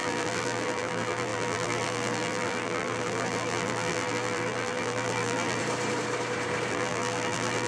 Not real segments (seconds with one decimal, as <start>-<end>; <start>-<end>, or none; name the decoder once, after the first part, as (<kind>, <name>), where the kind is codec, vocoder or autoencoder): 0.0-5.6 (vocoder, BigVGAN v2); 6.7-7.7